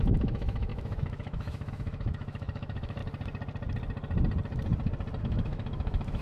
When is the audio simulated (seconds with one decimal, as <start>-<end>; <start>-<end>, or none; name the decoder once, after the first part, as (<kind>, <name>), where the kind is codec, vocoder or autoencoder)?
0.0-3.0 (autoencoder, DAC-VAE); 5.2-6.2